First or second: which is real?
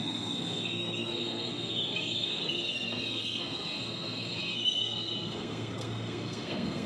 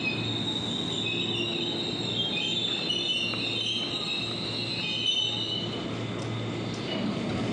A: second